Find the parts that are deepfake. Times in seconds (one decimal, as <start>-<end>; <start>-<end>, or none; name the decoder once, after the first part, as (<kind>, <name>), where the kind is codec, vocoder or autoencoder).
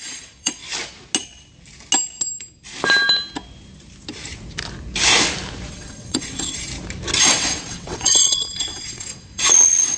0.0-0.6 (vocoder, WaveNeXt); 5.7-6.7; 7.2-10.0